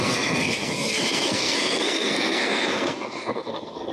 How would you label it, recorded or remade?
remade